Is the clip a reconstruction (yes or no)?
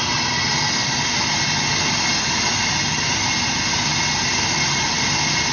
no